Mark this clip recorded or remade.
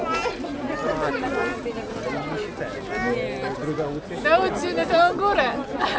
recorded